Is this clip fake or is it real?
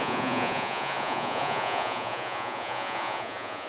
fake